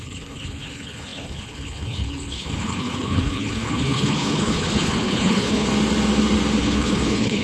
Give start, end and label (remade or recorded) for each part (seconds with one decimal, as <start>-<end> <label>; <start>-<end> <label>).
0.0-5.7 remade; 5.7-6.6 recorded; 6.6-7.4 remade

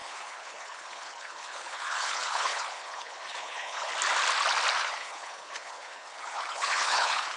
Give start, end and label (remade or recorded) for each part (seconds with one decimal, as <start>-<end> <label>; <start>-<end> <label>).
0.0-3.9 remade; 3.9-4.8 recorded; 4.8-7.4 remade